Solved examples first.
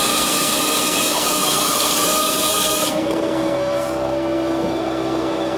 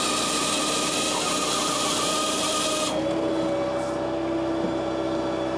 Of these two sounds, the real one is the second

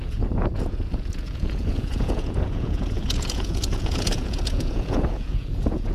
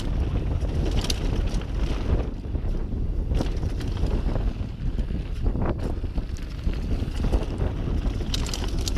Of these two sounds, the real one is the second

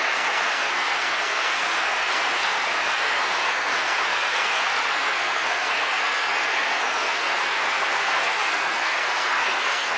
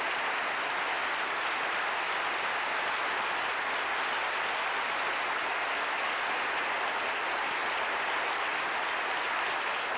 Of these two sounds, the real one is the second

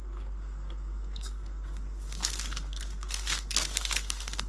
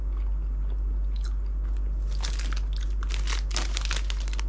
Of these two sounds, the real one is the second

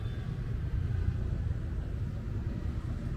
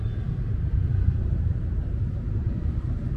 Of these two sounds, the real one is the first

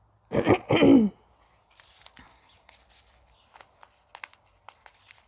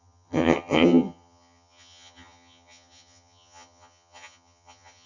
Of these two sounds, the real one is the first